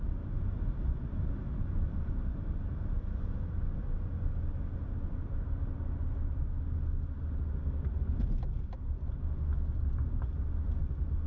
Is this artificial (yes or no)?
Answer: no